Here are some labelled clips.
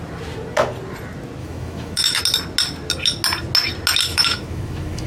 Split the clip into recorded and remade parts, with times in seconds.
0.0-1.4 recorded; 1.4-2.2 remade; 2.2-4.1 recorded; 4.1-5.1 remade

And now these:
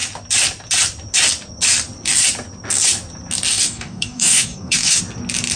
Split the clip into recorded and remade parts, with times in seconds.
0.0-3.5 recorded; 3.5-5.0 remade; 5.0-5.6 recorded

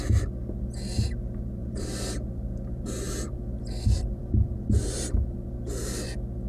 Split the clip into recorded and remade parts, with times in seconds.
0.0-1.6 recorded; 1.6-5.5 remade; 5.5-6.5 recorded

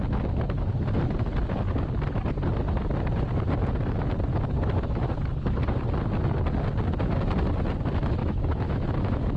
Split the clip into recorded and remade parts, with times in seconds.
0.0-8.2 recorded; 8.2-9.4 remade